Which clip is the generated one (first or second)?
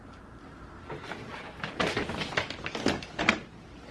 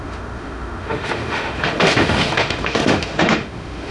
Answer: second